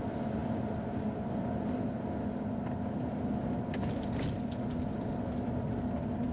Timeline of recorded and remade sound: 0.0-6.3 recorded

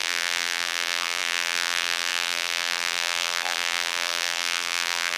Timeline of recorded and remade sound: 0.0-5.2 remade

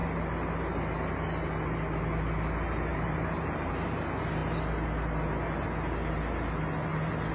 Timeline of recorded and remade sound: 0.0-2.9 recorded; 2.9-3.7 remade; 3.7-7.3 recorded